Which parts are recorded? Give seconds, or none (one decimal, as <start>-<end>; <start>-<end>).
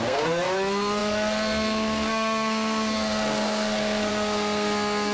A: none